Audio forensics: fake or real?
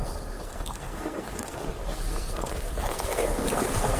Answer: fake